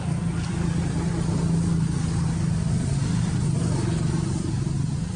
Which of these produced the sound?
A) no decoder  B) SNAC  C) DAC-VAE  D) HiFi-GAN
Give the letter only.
A